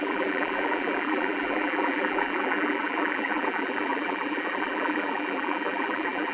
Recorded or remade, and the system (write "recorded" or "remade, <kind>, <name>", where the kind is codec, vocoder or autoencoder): remade, vocoder, BigVGAN v2